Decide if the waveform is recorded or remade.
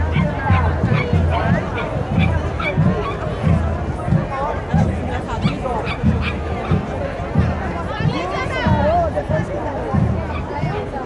recorded